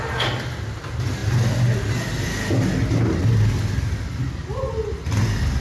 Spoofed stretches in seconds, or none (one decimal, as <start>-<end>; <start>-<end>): none